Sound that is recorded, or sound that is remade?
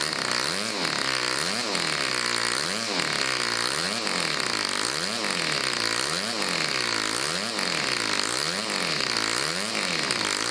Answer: recorded